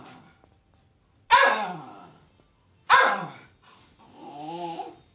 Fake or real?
real